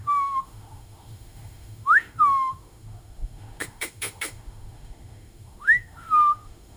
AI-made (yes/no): yes